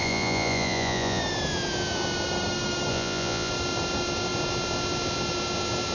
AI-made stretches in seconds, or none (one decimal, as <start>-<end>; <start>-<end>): 0.0-1.2; 2.9-3.5